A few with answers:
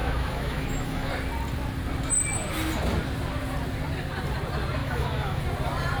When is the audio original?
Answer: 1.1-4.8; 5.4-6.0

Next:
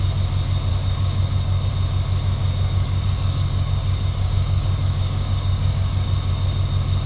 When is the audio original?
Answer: 0.0-0.7; 1.7-2.4; 6.3-7.1

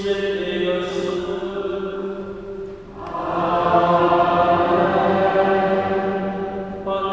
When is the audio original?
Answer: 0.0-0.9; 2.2-3.5; 4.0-7.1

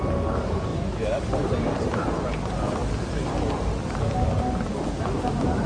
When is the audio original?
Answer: 0.0-0.7; 1.2-5.7